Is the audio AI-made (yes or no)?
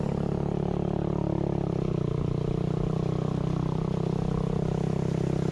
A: no